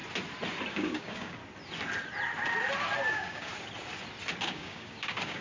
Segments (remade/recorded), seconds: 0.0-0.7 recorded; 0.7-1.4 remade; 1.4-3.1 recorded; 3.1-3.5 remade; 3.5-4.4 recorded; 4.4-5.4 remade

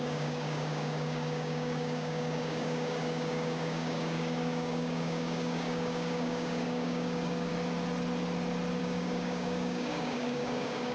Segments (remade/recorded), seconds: 0.0-7.5 remade; 7.5-8.8 recorded; 8.8-10.9 remade

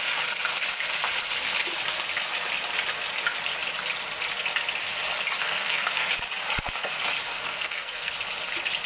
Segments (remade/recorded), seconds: 0.0-5.4 recorded; 5.4-6.1 remade; 6.1-7.3 recorded; 7.3-8.1 remade; 8.1-8.9 recorded

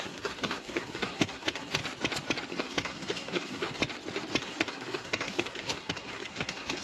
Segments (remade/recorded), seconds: 0.0-1.8 remade; 1.8-2.5 recorded; 2.5-3.8 remade; 3.8-4.4 recorded; 4.4-6.8 remade

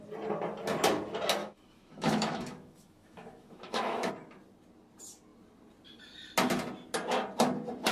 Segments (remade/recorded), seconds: 0.0-1.4 recorded; 1.4-4.1 remade; 4.1-7.9 recorded

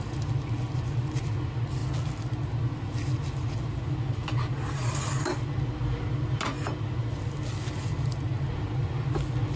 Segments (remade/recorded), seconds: 0.0-9.6 recorded